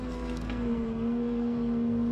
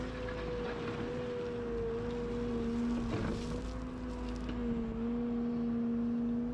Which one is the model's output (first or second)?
first